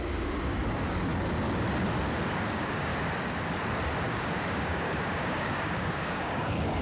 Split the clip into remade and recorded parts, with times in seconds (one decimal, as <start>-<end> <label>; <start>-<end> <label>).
0.0-1.1 remade; 1.1-2.3 recorded; 2.3-2.9 remade; 2.9-4.1 recorded; 4.1-6.8 remade